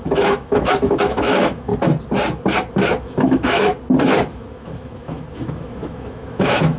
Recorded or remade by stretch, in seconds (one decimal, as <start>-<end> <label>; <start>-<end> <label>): 0.0-1.7 remade; 1.7-3.0 recorded; 3.0-3.7 remade; 3.7-4.3 recorded; 4.3-6.8 remade